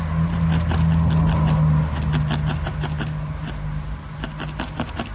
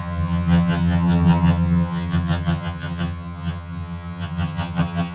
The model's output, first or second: second